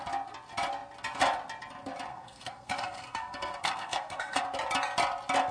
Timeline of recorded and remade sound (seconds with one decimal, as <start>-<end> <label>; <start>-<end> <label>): 0.0-2.1 recorded; 2.1-4.4 remade; 4.4-5.5 recorded